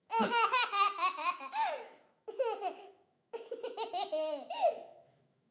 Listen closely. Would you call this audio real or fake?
fake